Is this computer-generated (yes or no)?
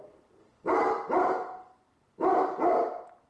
no